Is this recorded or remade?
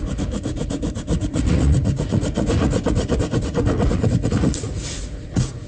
remade